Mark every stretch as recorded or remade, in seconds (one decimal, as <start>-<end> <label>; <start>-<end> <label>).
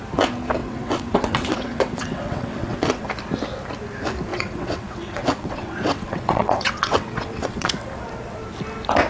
0.0-0.6 recorded; 0.6-3.1 remade; 3.1-4.3 recorded; 4.3-7.7 remade; 7.7-9.1 recorded